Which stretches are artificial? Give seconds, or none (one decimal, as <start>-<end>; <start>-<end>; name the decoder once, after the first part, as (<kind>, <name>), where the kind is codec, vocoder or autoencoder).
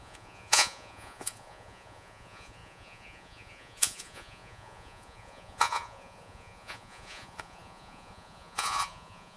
0.0-9.4 (vocoder, Vocos)